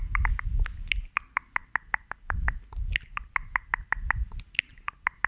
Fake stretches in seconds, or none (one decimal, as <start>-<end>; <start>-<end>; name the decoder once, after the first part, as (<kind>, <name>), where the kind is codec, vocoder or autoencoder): none